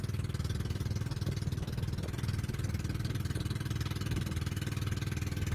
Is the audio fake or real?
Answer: real